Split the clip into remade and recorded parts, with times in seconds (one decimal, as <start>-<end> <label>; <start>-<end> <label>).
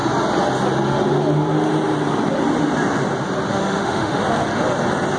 0.0-3.5 recorded; 3.5-4.2 remade; 4.2-5.2 recorded